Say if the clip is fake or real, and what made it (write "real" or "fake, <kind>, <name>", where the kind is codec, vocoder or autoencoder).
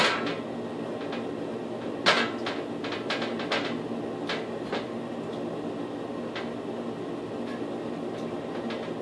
real